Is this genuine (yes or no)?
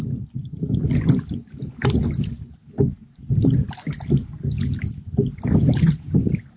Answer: yes